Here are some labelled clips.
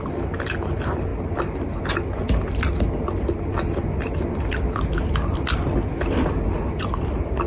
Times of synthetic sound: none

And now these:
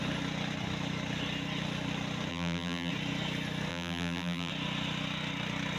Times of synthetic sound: 2.3-2.9; 3.7-4.5

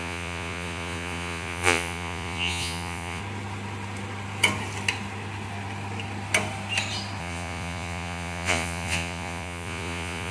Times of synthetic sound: 0.0-3.2; 7.2-10.3

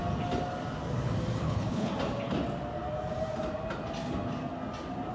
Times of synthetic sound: 1.4-1.9

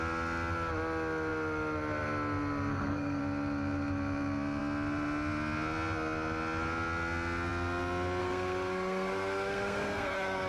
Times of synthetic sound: 2.7-3.2; 8.2-10.5

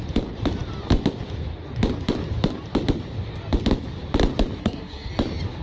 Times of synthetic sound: 4.6-5.1

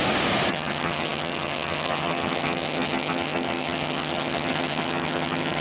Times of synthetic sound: 0.5-5.6

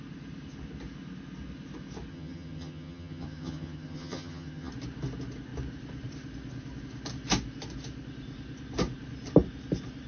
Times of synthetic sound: 2.1-4.7